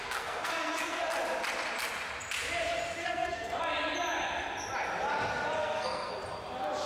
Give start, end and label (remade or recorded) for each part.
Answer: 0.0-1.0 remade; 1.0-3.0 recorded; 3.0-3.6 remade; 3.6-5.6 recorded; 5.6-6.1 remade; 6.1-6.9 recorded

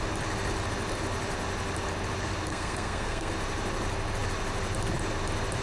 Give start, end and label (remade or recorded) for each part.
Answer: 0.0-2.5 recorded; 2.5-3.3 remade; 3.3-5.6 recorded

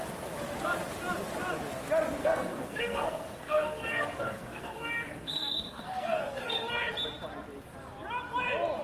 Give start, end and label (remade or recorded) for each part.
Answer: 0.0-2.2 recorded; 2.2-6.9 remade; 6.9-8.8 recorded

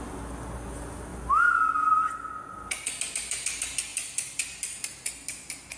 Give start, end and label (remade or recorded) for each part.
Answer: 0.0-5.8 recorded

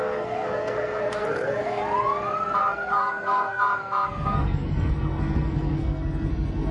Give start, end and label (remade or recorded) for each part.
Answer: 0.0-1.8 remade; 1.8-2.6 recorded; 2.6-6.7 remade